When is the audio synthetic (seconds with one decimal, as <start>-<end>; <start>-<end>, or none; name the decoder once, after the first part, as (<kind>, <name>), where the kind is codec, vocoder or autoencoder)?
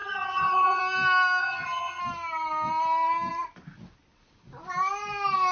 0.0-0.8 (vocoder, HiFi-GAN); 1.4-2.0